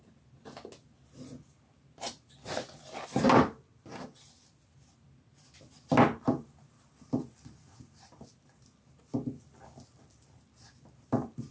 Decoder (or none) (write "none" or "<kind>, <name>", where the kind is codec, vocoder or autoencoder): none